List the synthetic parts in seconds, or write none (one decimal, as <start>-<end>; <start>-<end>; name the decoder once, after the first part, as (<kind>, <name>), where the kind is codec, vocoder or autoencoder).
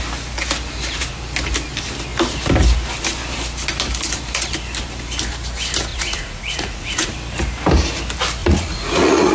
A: 5.9-7.1 (vocoder, Vocos); 8.4-9.3